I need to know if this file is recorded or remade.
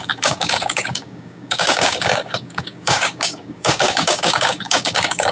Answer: remade